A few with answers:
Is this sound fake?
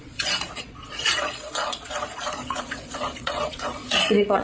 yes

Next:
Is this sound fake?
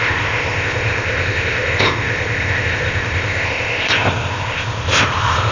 yes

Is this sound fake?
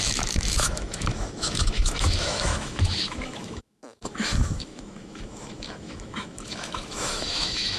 yes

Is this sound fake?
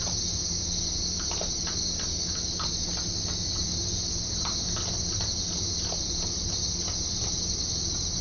no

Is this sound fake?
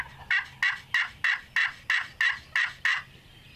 no